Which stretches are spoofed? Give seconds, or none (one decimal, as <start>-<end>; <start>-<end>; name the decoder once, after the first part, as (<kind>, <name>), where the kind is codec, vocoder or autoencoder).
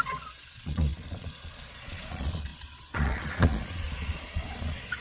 0.0-5.0 (vocoder, Vocos)